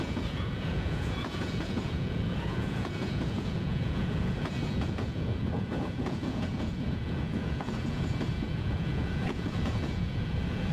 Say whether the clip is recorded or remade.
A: remade